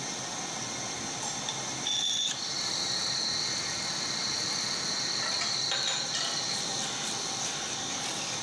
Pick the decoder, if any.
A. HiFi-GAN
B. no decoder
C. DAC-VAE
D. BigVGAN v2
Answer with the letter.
D